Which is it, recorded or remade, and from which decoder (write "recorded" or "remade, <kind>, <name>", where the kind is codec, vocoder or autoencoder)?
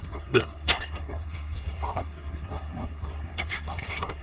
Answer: remade, codec, SNAC